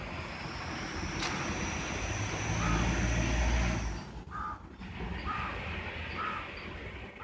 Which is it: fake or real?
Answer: real